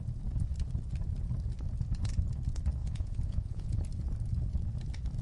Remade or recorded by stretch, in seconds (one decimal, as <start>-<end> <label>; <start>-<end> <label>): 0.0-2.8 recorded; 2.8-3.8 remade; 3.8-5.2 recorded